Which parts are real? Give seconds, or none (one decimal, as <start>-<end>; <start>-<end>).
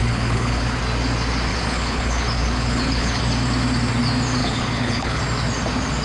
0.8-1.5; 3.2-4.4; 5.2-6.0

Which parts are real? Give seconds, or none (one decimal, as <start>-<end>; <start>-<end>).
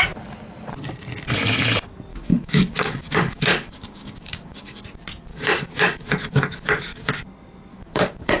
0.0-2.1; 4.8-5.3; 7.1-7.7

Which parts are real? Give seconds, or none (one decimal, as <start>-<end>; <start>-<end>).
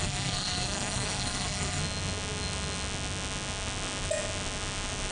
1.8-5.1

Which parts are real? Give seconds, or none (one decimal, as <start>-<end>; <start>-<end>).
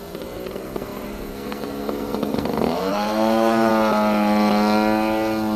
3.7-5.6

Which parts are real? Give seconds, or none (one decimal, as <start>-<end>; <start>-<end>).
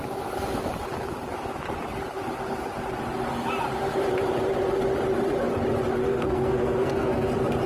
0.0-6.0; 7.3-7.7